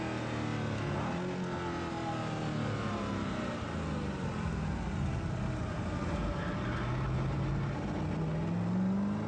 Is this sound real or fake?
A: real